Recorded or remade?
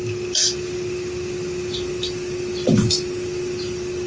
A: recorded